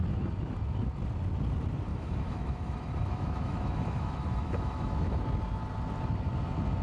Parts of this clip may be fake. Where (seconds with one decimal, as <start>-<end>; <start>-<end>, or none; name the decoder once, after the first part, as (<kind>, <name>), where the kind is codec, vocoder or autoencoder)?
1.9-5.2 (autoencoder, DAC-VAE)